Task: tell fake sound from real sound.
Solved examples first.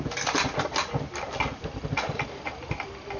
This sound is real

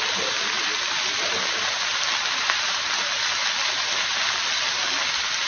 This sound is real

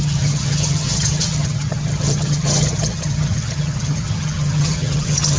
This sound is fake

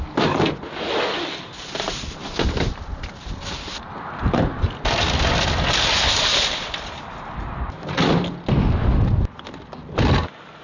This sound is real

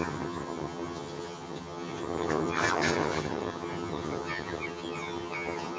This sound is fake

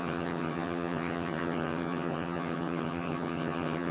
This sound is fake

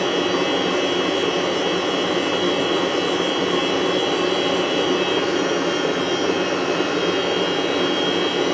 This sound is real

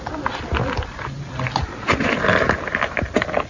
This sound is real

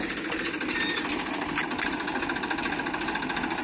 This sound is real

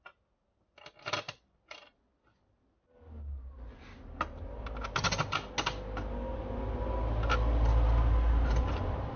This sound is real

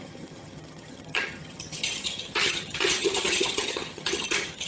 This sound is fake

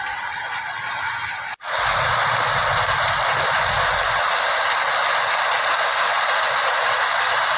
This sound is real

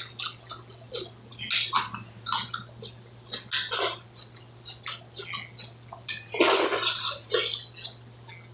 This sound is real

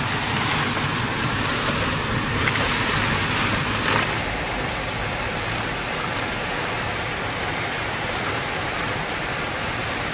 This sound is real